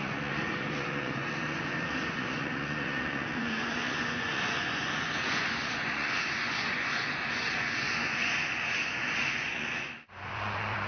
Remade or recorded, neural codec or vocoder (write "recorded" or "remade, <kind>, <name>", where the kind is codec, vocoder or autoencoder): remade, vocoder, Vocos